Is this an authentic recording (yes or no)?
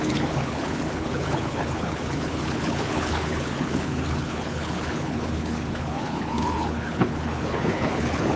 no